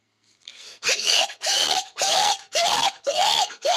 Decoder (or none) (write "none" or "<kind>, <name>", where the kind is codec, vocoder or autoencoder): codec, SNAC